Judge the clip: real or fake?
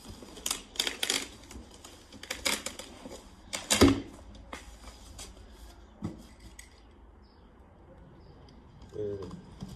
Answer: real